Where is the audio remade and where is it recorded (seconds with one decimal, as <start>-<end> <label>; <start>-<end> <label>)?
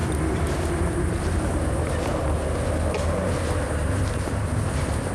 0.0-5.1 recorded